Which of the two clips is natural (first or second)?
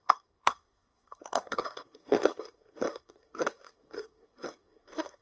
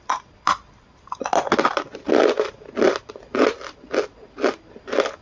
second